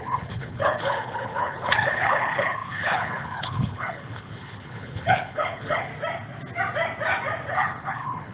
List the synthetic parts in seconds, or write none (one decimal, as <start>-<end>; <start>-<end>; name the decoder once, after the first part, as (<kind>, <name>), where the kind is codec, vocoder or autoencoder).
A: 0.0-5.9 (codec, HILCodec); 7.5-8.3